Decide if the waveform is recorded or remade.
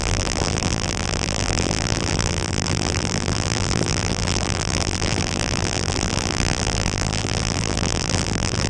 remade